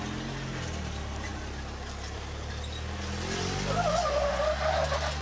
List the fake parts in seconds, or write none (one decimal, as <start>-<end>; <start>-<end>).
none